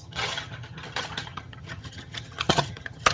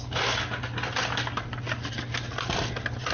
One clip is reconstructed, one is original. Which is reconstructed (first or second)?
first